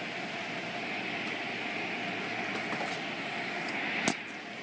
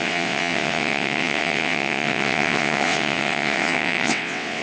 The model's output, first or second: second